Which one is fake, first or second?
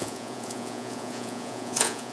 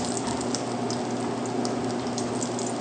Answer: first